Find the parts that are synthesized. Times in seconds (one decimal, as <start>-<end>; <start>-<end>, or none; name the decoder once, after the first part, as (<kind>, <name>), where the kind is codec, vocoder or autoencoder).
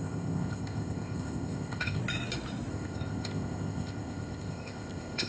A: 0.0-2.0 (codec, ZipCodec); 2.7-5.3